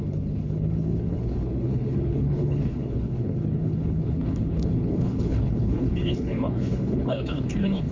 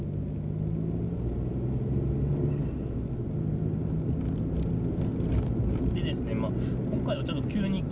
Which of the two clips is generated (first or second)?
first